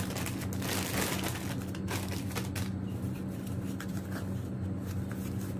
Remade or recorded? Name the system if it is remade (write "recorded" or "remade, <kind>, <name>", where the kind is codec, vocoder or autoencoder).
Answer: recorded